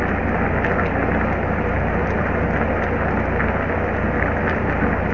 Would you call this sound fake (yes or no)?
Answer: no